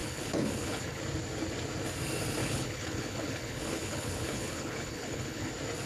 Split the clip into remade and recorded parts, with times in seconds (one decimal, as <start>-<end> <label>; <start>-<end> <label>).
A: 0.0-1.0 remade; 1.0-2.4 recorded; 2.4-5.5 remade; 5.5-5.9 recorded